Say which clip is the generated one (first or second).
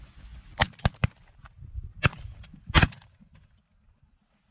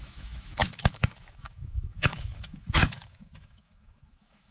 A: second